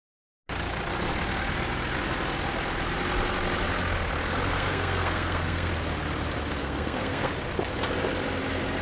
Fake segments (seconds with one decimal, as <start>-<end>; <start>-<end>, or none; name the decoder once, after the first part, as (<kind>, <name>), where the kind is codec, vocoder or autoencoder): 4.5-5.7 (codec, SNAC); 6.6-7.3